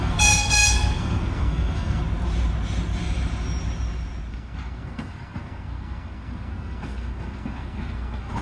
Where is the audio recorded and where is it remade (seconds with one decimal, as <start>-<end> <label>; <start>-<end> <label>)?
0.0-2.0 remade; 2.0-4.3 recorded; 4.3-8.4 remade